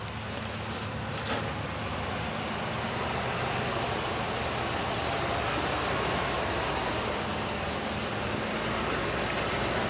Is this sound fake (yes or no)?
no